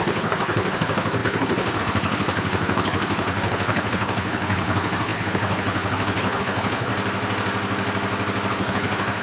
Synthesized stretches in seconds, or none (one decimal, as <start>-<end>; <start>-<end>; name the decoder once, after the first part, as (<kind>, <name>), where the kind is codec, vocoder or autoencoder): 0.0-6.9 (codec, HILCodec); 8.5-9.2